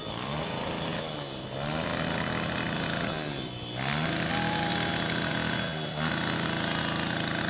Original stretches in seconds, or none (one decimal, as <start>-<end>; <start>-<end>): 0.0-7.5